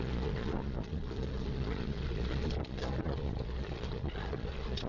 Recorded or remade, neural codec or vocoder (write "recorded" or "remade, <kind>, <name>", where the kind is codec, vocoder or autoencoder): remade, vocoder, Vocos